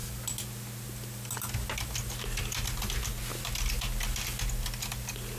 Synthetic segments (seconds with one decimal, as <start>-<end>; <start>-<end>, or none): none